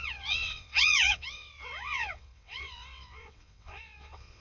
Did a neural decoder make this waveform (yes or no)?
yes